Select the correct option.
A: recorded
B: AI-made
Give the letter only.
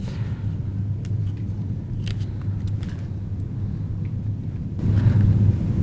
A